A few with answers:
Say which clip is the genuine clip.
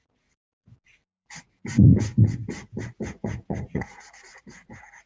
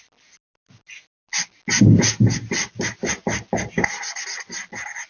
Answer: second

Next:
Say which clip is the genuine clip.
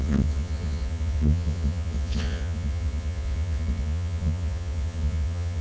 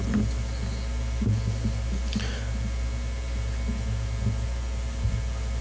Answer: second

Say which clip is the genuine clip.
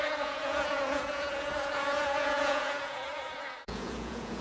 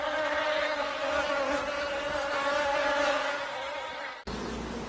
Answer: second